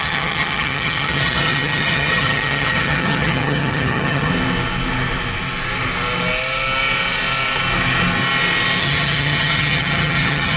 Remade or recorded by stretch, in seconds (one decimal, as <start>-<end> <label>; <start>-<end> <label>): 0.0-4.3 remade; 4.3-8.8 recorded; 8.8-10.6 remade